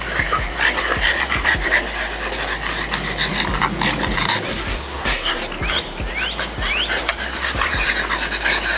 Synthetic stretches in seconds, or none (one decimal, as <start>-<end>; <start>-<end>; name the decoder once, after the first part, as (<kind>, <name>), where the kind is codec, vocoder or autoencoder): 4.5-5.4 (codec, SNAC)